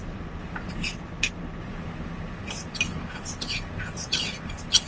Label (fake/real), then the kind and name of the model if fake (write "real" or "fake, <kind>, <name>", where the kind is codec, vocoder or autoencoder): real